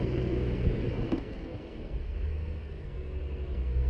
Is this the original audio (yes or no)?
no